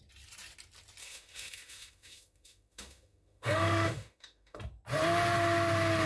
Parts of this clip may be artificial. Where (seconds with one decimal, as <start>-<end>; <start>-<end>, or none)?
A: 1.0-4.6